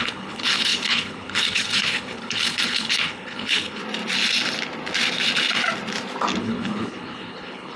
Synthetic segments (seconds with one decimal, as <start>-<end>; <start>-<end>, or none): 0.0-3.8; 6.4-7.8